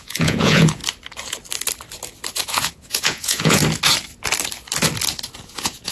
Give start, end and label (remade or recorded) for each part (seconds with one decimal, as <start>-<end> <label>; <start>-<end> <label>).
0.0-0.8 remade; 0.8-2.4 recorded; 2.4-3.6 remade; 3.6-5.4 recorded; 5.4-5.9 remade